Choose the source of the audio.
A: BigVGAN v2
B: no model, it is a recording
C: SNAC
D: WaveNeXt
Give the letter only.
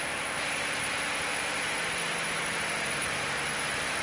A